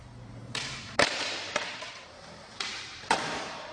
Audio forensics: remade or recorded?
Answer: remade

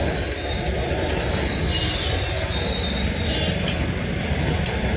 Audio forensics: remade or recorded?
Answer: recorded